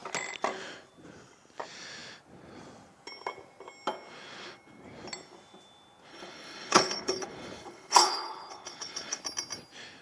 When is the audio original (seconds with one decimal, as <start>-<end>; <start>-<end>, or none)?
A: 0.0-6.1; 9.2-10.0